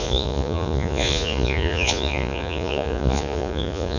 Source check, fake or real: fake